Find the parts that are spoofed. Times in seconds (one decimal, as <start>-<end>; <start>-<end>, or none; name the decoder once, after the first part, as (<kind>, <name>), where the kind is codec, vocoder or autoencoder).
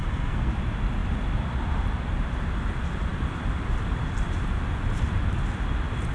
0.0-0.5 (codec, SNAC)